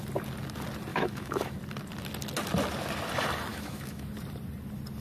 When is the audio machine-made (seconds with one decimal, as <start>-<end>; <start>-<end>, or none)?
0.9-1.6; 3.5-4.1